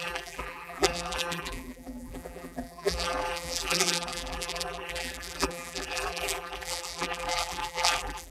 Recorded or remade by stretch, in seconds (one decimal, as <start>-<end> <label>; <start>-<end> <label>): 0.0-8.3 remade